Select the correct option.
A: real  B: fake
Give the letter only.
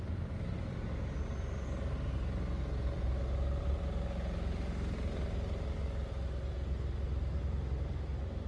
A